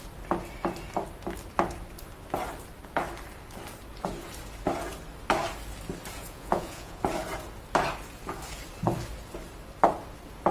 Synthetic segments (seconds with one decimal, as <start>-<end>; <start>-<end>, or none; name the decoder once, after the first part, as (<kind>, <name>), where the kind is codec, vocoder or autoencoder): 6.2-7.0 (vocoder, Vocos)